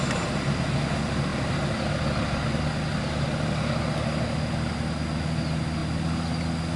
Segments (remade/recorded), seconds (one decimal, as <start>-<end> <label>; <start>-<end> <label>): 0.0-6.8 recorded